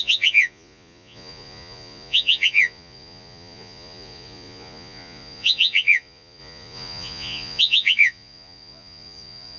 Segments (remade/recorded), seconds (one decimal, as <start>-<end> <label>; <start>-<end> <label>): 0.0-9.6 remade